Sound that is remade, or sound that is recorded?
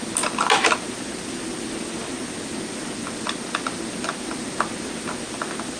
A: recorded